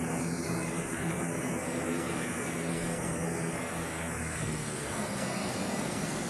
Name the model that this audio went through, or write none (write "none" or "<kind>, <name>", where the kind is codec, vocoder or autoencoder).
codec, SNAC